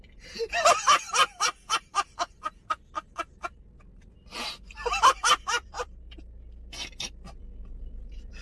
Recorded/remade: remade